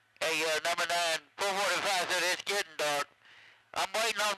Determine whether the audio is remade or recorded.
recorded